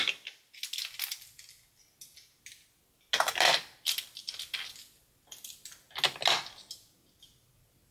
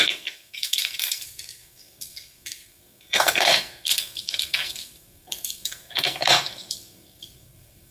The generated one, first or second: second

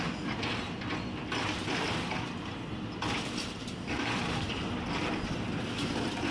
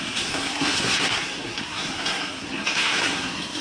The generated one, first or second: second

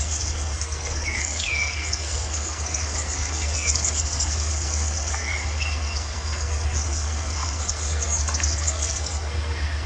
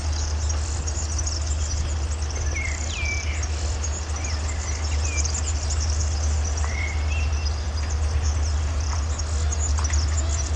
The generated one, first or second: first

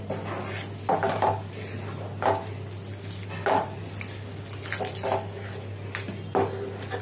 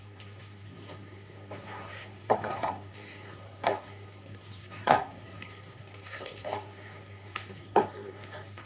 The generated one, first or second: second